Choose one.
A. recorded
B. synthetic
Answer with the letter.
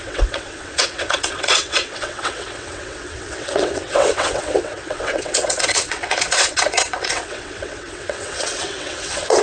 B